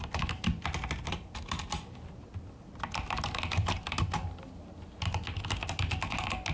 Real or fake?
real